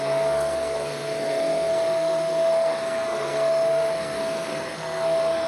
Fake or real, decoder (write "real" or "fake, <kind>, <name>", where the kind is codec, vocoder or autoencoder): fake, codec, SNAC